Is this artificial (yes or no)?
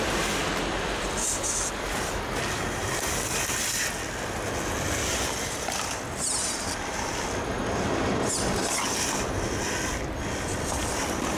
no